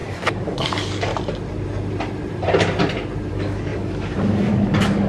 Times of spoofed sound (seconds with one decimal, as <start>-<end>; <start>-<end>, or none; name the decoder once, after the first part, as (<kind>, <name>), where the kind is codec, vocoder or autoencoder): 0.0-1.1 (codec, DAC); 3.3-5.1